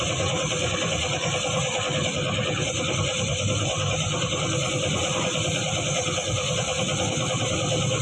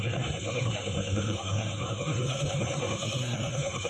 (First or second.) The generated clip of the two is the second